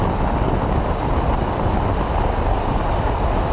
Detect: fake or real real